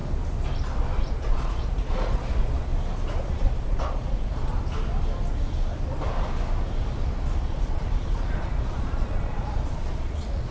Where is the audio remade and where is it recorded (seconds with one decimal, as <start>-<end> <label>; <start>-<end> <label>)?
0.0-1.0 recorded; 1.0-2.7 remade; 2.7-3.2 recorded; 3.2-4.5 remade; 4.5-7.4 recorded; 7.4-10.5 remade